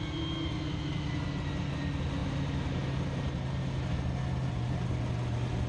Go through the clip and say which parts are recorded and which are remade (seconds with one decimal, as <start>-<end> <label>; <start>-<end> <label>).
0.0-5.7 recorded